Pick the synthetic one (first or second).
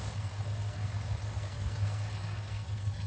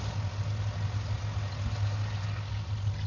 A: first